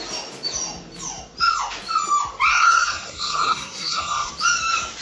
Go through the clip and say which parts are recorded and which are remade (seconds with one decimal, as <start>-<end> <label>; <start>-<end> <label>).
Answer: 0.0-2.5 recorded; 2.5-4.3 remade; 4.3-5.0 recorded